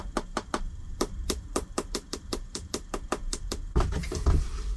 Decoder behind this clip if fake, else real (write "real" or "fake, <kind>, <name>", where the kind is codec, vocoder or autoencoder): fake, vocoder, BigVGAN v2